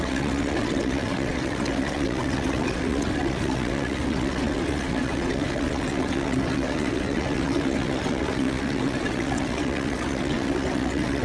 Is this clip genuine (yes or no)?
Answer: no